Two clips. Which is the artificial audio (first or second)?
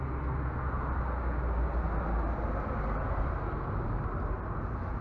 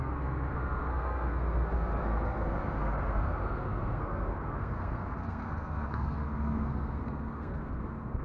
second